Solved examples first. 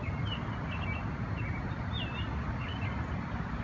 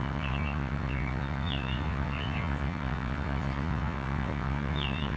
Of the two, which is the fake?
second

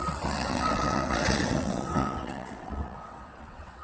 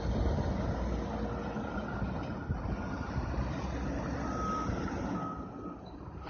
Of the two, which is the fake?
first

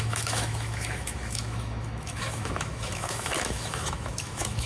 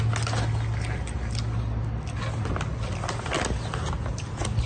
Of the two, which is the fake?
first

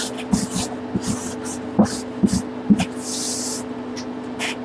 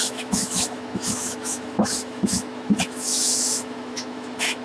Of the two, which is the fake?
second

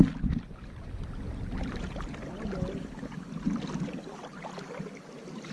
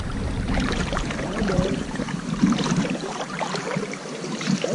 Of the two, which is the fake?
second